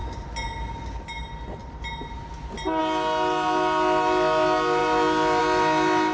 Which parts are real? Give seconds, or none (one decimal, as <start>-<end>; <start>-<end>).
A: 0.0-6.1

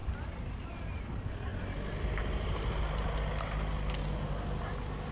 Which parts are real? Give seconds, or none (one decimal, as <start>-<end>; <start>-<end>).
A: 0.0-5.1